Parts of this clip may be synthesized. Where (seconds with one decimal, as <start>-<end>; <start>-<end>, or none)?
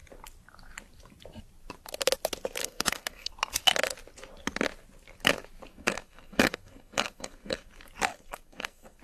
2.6-3.3; 5.7-7.7; 8.1-9.0